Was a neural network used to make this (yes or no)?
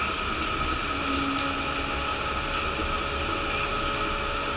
no